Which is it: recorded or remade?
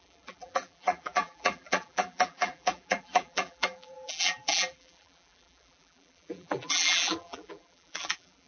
remade